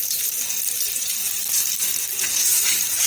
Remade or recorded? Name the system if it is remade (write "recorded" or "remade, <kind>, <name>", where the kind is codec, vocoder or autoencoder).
remade, vocoder, BigVGAN v2